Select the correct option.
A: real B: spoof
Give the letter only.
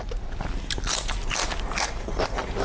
A